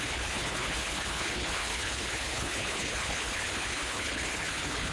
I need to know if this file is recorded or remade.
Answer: remade